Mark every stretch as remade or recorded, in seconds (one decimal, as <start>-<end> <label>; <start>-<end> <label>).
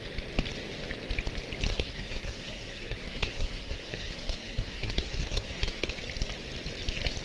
0.0-1.7 recorded; 1.7-5.9 remade; 5.9-7.2 recorded